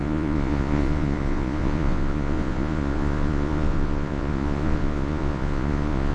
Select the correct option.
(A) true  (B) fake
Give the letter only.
B